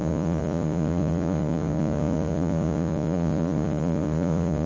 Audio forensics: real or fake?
fake